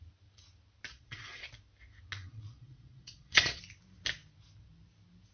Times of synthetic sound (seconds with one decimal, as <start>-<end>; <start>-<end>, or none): 0.9-1.5; 2.2-3.6